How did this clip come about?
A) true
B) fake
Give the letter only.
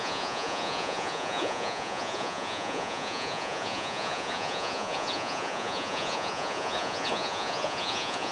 B